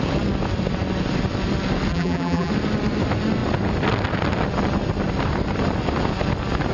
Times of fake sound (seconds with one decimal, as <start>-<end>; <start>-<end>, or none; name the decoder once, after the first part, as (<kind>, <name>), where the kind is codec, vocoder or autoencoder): 1.9-2.5 (vocoder, BigVGAN v2)